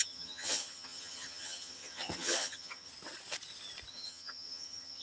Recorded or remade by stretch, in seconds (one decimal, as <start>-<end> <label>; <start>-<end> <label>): 0.0-2.9 remade; 2.9-3.9 recorded; 3.9-5.0 remade